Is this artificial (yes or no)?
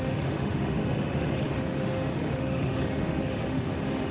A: yes